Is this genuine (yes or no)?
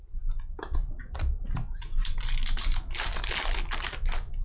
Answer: yes